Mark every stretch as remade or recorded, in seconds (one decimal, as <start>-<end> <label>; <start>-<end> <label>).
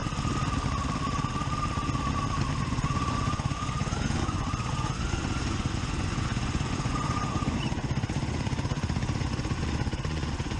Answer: 0.0-2.6 recorded; 2.6-10.6 remade